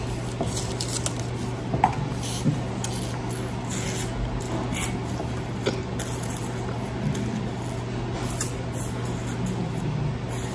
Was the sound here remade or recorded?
recorded